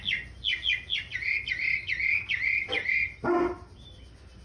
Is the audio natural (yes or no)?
yes